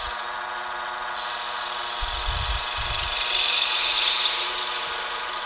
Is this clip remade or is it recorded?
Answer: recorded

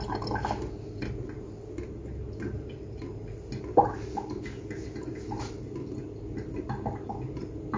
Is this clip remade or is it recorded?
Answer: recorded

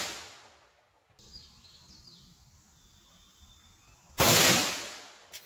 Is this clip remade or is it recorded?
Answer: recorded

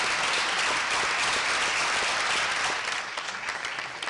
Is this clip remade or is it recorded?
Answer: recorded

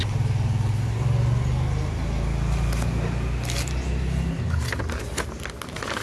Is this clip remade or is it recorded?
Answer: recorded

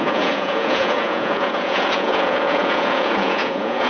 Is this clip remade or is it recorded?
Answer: remade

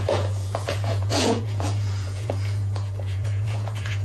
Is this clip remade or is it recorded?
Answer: remade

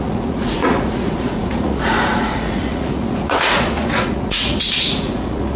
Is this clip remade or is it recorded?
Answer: remade